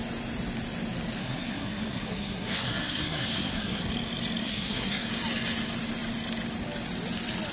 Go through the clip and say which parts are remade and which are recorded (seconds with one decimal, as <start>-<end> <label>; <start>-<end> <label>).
0.0-1.2 recorded; 1.2-3.8 remade; 3.8-4.4 recorded; 4.4-5.1 remade; 5.1-7.5 recorded